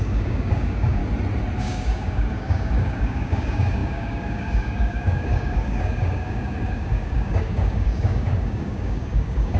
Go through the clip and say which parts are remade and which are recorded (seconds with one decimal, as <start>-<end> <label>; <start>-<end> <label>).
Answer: 0.0-1.0 remade; 1.0-1.6 recorded; 1.6-9.6 remade